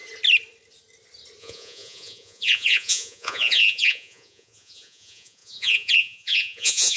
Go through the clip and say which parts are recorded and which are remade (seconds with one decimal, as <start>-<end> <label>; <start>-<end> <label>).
0.0-1.4 recorded; 1.4-7.0 remade